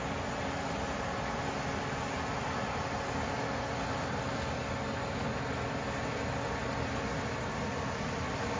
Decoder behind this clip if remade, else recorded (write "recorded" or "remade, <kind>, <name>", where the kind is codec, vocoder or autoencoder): recorded